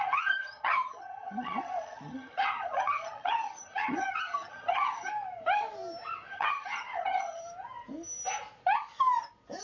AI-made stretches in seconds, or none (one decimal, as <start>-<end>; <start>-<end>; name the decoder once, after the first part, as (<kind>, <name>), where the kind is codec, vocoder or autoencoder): 0.0-5.1 (vocoder, HiFi-GAN); 6.3-7.4